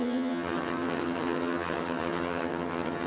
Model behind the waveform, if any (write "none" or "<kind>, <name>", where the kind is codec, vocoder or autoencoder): vocoder, HiFi-GAN